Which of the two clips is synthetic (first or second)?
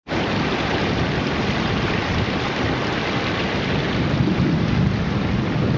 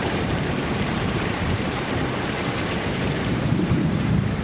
second